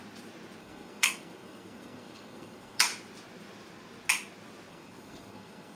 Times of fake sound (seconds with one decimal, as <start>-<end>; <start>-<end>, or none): 0.6-2.9; 4.7-5.8